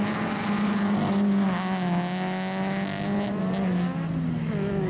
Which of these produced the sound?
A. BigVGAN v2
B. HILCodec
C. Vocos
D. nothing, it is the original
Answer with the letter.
D